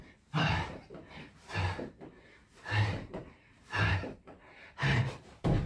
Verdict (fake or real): fake